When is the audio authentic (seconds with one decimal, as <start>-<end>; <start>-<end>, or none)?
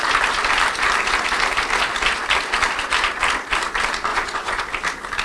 0.0-4.1; 4.6-5.2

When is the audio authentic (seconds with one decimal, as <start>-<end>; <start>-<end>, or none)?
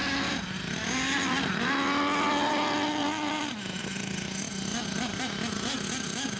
0.0-3.0; 3.8-4.7; 5.2-6.4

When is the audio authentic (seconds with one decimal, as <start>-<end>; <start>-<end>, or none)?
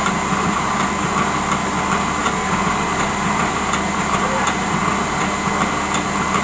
0.9-2.2; 4.8-6.4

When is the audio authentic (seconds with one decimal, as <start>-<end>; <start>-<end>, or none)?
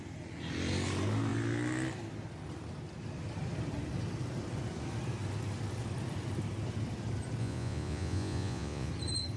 0.0-7.4; 8.9-9.4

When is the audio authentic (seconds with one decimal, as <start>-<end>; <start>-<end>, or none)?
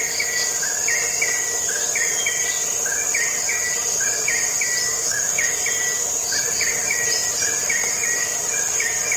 0.0-4.9; 5.6-9.2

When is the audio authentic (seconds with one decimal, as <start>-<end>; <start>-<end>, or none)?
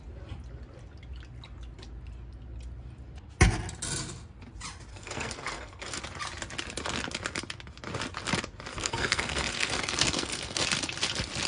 0.0-4.9; 6.0-8.7; 10.6-11.5